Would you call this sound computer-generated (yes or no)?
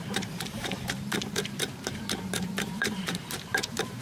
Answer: yes